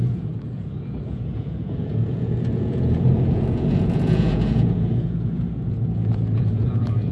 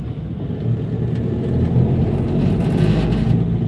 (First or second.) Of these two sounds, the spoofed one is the first